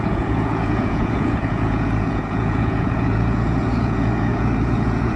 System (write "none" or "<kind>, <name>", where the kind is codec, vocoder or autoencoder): vocoder, Vocos